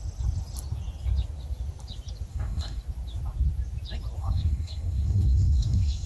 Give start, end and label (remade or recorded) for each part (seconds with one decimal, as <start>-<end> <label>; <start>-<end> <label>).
0.0-2.3 recorded; 2.3-2.8 remade; 2.8-4.2 recorded; 4.2-6.1 remade